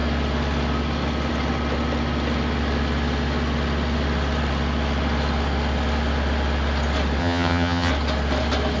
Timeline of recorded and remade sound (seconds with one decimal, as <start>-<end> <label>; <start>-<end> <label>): 0.0-7.2 recorded; 7.2-7.9 remade; 7.9-8.8 recorded